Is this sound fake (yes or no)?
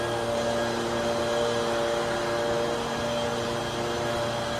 no